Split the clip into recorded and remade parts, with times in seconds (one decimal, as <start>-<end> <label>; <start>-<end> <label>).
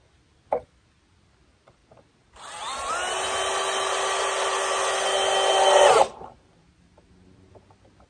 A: 0.0-8.1 recorded